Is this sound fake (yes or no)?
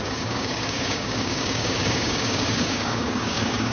yes